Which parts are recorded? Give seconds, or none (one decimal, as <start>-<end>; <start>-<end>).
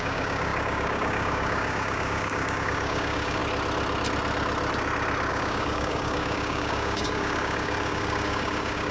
3.4-5.3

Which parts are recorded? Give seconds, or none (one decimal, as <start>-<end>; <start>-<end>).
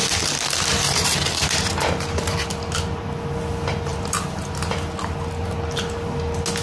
0.0-6.6